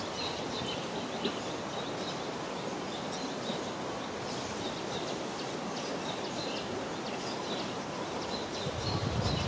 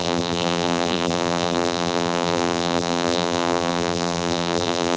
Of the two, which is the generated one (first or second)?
second